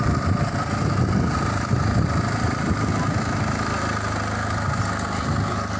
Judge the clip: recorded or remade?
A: recorded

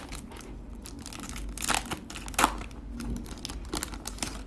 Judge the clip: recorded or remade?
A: recorded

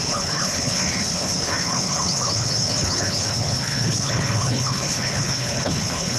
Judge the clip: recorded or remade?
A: remade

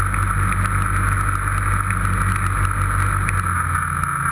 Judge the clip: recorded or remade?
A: recorded